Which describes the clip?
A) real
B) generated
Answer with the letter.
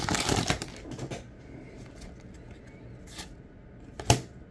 A